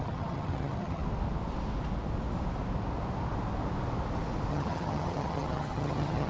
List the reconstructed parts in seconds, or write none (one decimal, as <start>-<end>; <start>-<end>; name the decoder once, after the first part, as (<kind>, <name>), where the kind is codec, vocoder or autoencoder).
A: 0.0-1.0 (vocoder, HiFi-GAN); 4.5-6.3